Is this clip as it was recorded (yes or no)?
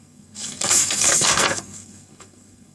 no